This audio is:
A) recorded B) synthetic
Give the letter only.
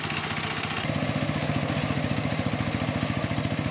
A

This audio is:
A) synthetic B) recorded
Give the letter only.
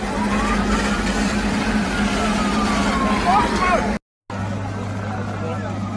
B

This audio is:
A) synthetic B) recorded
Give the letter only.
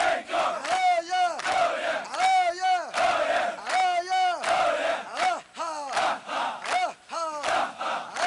B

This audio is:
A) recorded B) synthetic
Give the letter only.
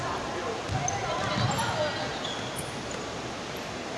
A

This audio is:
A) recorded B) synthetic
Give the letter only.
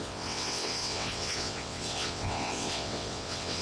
B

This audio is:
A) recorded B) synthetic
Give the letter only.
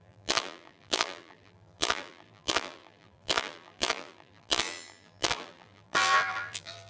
B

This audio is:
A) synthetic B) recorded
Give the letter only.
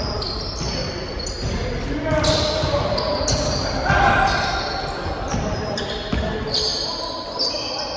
B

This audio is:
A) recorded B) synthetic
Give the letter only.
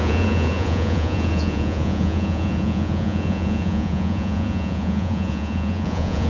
B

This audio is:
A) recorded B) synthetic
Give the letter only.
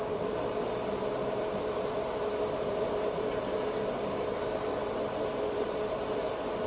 B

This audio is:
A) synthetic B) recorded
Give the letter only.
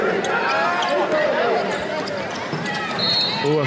B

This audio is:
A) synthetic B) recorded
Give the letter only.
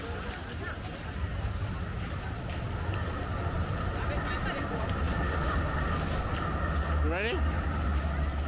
B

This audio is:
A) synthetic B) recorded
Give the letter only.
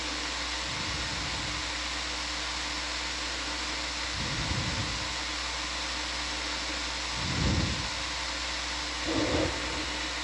B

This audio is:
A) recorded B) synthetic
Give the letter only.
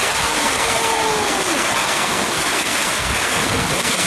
B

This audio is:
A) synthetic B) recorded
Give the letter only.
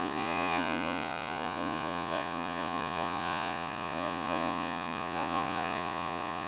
A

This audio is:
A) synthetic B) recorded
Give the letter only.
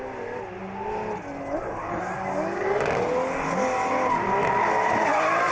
B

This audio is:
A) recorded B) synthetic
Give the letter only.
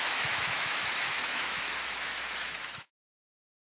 B